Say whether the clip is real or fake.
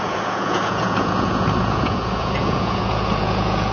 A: fake